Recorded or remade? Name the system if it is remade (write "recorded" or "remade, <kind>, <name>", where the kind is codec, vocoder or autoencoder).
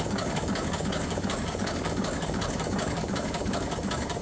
remade, codec, DAC